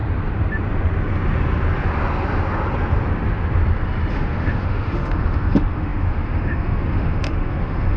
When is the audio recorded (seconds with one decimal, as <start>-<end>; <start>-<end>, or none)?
0.0-4.1

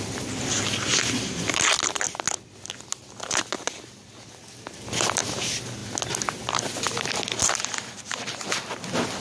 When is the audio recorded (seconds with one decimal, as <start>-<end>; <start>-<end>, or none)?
0.0-9.2

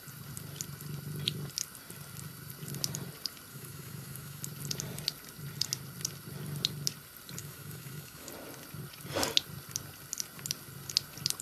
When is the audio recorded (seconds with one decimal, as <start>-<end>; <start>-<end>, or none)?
0.0-3.5; 4.4-7.4; 8.3-11.4

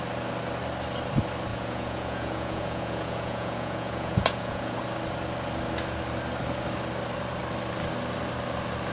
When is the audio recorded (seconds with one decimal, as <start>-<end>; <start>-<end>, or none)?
0.0-1.5; 4.8-8.9

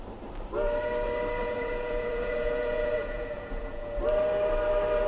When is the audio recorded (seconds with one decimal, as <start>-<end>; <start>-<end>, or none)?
0.0-1.4; 4.0-5.1

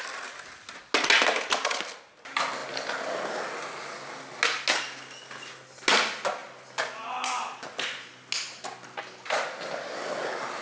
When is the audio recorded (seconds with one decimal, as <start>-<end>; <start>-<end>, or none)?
0.0-10.6

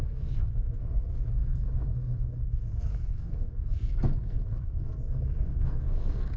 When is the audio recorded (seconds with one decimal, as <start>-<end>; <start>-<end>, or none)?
none